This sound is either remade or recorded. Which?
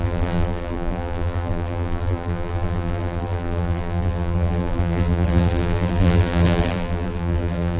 remade